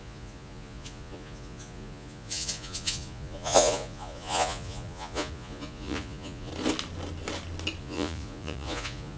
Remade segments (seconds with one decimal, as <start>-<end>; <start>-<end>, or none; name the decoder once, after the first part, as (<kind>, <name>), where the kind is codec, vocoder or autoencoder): 0.0-6.5 (vocoder, Vocos); 7.8-9.2